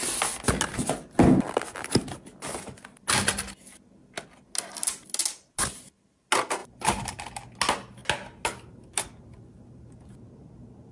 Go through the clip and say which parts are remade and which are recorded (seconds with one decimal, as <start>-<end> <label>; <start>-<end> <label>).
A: 0.0-6.6 recorded; 6.6-7.2 remade; 7.2-10.9 recorded